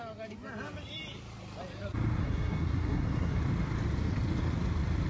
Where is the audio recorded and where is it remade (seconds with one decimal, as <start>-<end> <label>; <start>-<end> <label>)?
0.0-2.2 recorded; 2.2-3.4 remade; 3.4-5.1 recorded